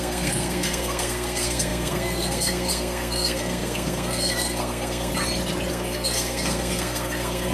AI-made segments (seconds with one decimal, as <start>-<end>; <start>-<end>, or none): 0.0-5.1; 5.7-7.5